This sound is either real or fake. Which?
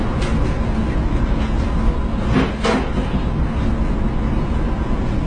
real